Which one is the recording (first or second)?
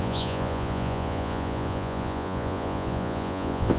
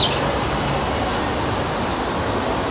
second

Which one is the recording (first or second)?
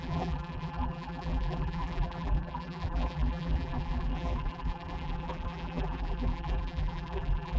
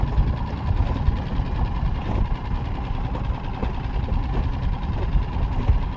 second